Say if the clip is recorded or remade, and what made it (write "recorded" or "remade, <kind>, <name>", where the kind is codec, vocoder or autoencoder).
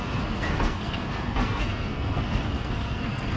remade, codec, SNAC